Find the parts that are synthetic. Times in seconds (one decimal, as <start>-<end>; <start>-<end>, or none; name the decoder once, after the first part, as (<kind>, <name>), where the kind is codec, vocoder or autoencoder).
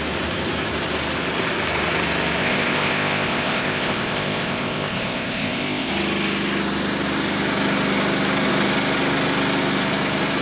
2.4-5.9 (codec, ZipCodec)